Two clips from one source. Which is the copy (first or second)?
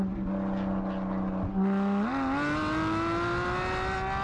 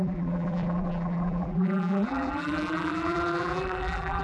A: second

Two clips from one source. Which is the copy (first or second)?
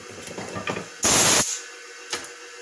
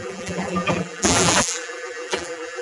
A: second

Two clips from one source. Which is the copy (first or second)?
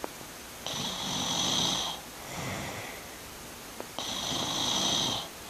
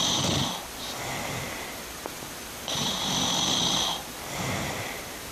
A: second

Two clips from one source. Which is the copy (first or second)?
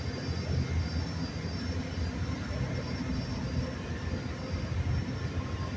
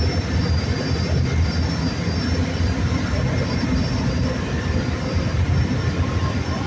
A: second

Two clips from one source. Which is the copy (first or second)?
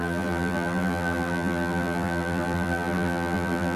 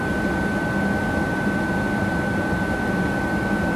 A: first